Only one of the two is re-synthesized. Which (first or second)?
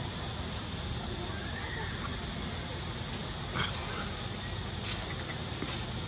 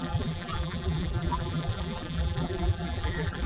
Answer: second